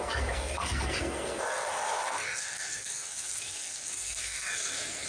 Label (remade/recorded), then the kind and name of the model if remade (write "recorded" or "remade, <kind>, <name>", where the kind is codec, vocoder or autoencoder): remade, codec, SNAC